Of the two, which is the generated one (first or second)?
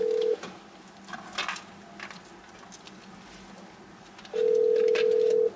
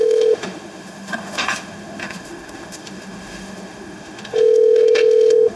second